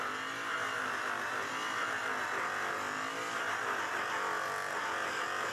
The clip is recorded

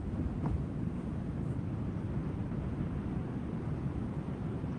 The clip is remade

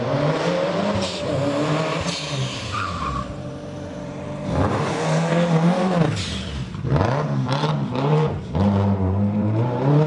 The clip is remade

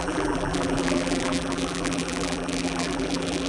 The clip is remade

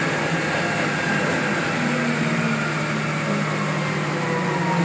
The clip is recorded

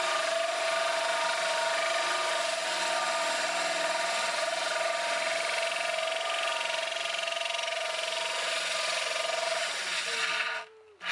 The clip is recorded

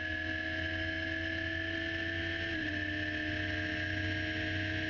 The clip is recorded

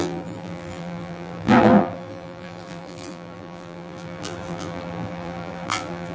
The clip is remade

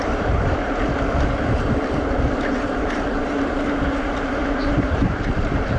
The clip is remade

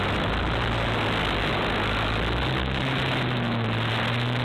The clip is recorded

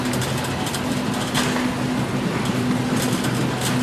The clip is recorded